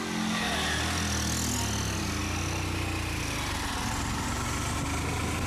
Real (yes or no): yes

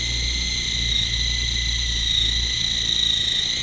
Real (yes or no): yes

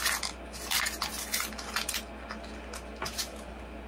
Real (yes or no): yes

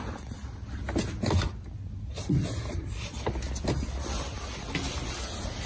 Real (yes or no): yes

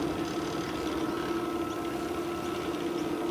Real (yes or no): yes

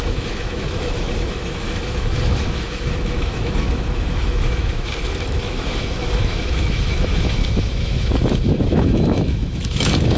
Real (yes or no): no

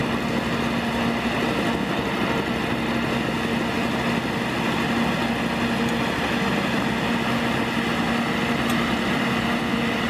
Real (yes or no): yes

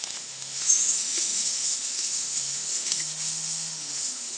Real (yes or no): no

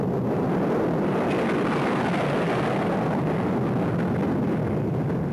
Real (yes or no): yes